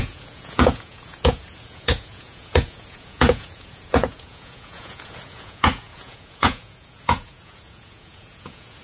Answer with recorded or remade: remade